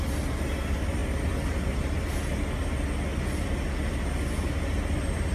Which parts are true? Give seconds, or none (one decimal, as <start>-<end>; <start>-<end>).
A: 0.0-5.3

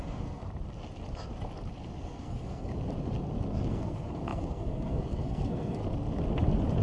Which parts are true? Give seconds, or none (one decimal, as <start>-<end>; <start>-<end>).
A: 0.4-2.0; 2.7-3.7; 5.8-6.8

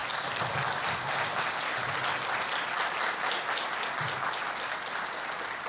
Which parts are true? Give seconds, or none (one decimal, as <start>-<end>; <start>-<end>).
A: 0.0-5.7

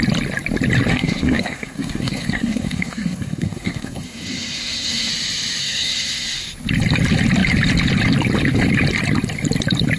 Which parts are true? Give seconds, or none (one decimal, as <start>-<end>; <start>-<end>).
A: 0.0-0.9; 5.1-5.6; 6.4-10.0

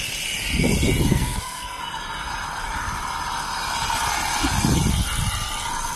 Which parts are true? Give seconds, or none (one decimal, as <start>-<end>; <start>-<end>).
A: 0.0-1.1; 1.8-6.0

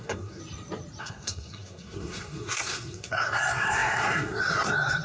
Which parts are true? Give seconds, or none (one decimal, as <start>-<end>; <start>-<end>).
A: 0.4-1.0